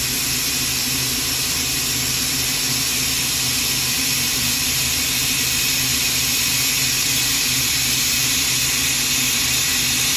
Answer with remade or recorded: recorded